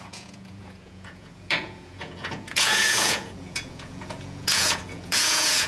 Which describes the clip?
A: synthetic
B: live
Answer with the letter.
A